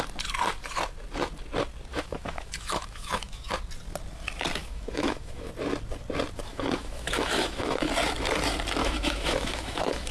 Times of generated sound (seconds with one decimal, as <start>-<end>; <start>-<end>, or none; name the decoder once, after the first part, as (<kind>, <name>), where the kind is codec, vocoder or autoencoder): 1.9-3.5 (autoencoder, DAC-VAE); 4.6-5.5; 6.5-7.9; 8.8-10.1